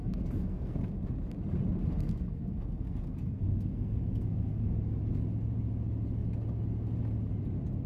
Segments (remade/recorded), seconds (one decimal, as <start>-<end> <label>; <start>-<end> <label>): 0.0-0.9 remade; 0.9-1.9 recorded; 1.9-5.0 remade; 5.0-7.9 recorded